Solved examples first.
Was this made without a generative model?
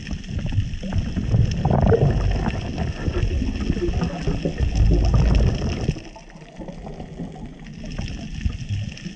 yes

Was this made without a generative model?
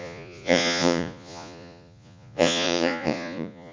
no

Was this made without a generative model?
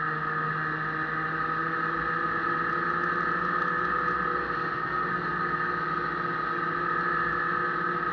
yes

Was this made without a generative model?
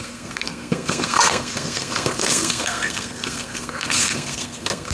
no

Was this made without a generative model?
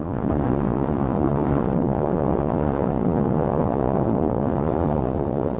no